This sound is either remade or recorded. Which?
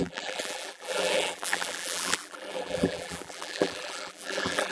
remade